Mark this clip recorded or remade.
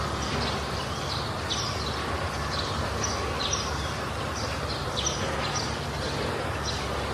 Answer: recorded